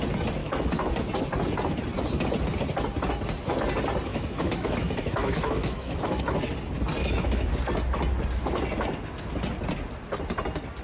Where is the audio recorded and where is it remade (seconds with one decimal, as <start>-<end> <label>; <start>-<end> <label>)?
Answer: 0.0-0.4 recorded; 0.4-0.9 remade; 0.9-4.1 recorded; 4.1-6.2 remade; 6.2-7.0 recorded; 7.0-7.5 remade; 7.5-10.8 recorded